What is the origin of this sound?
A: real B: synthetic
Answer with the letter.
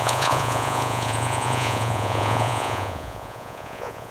B